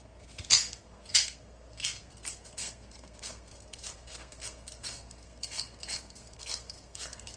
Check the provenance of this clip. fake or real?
fake